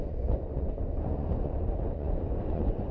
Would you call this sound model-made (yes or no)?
yes